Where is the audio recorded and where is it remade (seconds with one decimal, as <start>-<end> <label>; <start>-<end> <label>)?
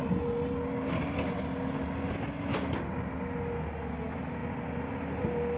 0.0-5.6 recorded